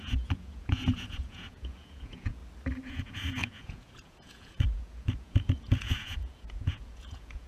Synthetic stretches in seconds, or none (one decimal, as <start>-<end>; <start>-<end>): 0.0-2.4; 2.9-7.5